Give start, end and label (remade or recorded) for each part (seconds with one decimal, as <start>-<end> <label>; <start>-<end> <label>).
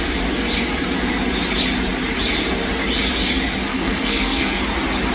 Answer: 0.0-3.7 recorded; 3.7-4.6 remade; 4.6-5.1 recorded